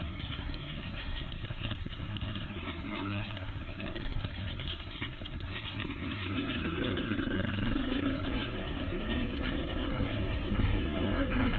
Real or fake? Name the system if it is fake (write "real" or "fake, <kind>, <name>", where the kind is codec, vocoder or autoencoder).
fake, codec, SNAC